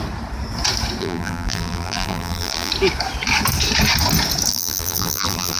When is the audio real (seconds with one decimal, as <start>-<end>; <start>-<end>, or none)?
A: 0.0-1.0; 2.7-4.5